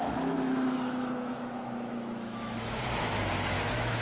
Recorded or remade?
remade